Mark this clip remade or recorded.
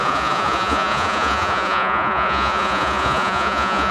remade